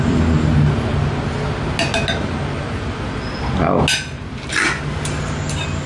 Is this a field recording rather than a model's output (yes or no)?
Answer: yes